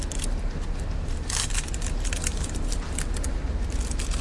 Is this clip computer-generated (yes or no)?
no